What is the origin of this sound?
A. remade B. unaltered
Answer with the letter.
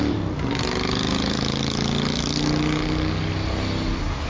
B